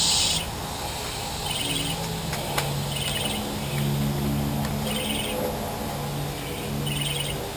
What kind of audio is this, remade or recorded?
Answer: recorded